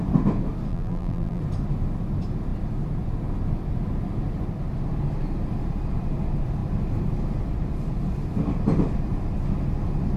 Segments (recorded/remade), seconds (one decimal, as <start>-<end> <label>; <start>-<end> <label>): 0.0-0.7 recorded; 0.7-1.4 remade; 1.4-10.2 recorded